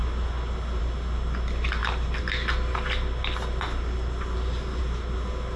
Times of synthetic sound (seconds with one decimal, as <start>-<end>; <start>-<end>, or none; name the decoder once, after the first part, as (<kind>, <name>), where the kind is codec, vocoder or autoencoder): none